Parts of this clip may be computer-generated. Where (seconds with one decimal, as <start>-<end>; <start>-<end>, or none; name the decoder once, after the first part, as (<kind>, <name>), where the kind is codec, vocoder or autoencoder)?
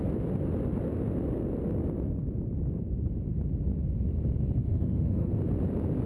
4.6-5.3 (autoencoder, DAC-VAE)